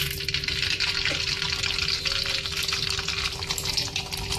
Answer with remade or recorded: recorded